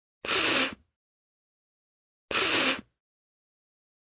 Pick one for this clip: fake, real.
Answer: real